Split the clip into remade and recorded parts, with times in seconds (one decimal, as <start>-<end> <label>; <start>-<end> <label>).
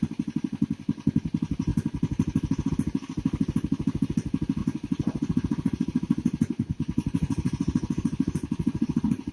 0.0-4.6 recorded; 4.6-9.3 remade